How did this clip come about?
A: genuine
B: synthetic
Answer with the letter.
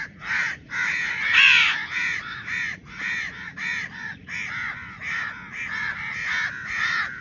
B